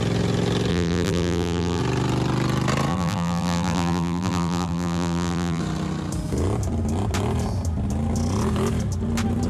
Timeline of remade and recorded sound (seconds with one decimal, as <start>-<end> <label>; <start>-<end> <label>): 0.0-0.7 recorded; 0.7-1.8 remade; 1.8-2.9 recorded; 2.9-5.6 remade; 5.6-9.5 recorded